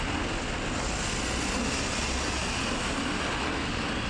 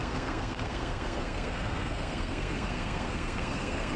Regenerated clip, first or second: second